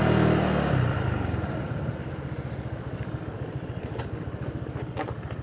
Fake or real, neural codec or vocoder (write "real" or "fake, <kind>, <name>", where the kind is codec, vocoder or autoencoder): real